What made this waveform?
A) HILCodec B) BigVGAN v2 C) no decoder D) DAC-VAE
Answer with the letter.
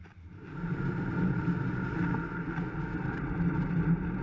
C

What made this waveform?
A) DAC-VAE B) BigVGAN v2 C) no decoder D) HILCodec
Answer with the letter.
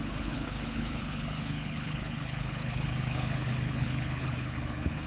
D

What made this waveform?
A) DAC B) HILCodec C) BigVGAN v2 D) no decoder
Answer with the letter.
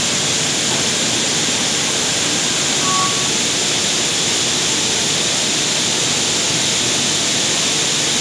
D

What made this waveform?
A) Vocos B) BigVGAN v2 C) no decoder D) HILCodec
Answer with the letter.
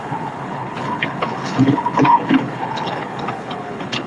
D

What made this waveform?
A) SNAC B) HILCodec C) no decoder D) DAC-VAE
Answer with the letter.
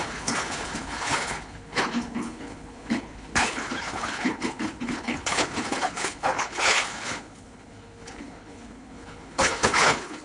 B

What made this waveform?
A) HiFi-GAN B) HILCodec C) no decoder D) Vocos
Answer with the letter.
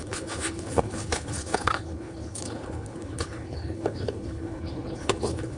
B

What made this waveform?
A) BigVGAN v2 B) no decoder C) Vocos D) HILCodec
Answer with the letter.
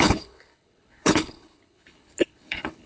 D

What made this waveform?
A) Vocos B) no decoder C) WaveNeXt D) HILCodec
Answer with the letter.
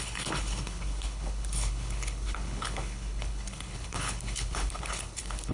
D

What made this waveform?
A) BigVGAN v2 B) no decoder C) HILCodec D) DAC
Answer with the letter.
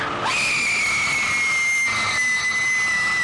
B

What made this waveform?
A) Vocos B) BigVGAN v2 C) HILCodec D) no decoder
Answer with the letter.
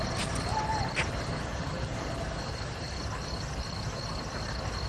D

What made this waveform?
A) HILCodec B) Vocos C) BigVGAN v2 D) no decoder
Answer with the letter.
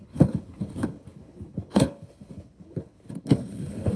A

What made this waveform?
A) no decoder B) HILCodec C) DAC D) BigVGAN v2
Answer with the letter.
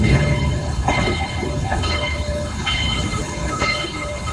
B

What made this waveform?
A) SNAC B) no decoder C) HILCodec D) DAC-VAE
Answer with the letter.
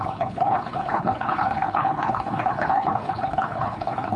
C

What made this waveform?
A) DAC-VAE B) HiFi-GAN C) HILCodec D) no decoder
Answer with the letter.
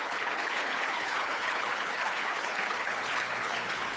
C